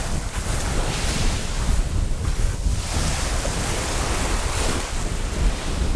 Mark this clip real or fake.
real